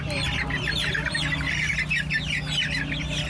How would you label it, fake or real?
real